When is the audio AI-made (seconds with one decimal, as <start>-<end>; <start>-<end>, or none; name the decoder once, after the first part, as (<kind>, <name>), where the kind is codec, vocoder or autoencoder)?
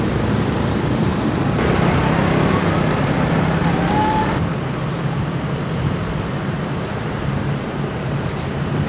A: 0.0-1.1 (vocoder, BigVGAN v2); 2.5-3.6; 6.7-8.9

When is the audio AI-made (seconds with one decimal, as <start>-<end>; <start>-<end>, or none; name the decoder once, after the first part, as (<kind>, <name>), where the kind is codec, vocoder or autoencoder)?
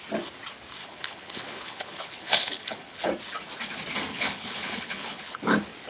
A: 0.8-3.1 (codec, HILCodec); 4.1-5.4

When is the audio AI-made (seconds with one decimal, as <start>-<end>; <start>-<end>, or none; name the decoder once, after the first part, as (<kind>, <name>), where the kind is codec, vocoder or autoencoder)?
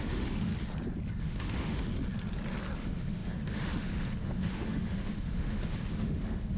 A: 0.0-0.5 (autoencoder, DAC-VAE); 1.2-1.9; 2.8-6.6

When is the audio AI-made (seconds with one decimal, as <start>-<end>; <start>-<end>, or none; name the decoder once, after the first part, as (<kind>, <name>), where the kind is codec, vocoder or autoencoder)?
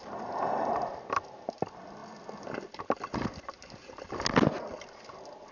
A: none